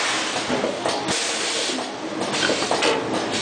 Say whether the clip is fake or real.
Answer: real